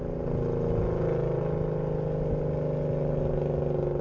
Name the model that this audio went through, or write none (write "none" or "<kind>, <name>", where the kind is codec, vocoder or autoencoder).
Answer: none